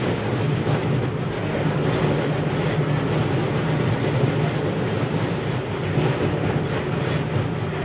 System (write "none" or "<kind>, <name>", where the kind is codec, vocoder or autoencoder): none